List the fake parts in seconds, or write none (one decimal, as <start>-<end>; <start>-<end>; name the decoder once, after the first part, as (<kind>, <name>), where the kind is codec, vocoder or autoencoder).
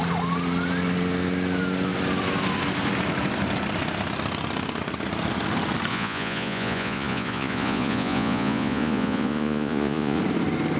5.9-10.2 (vocoder, Vocos)